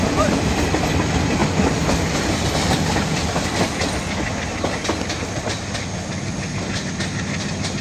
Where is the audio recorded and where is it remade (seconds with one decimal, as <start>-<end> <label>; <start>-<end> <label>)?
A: 0.0-7.8 recorded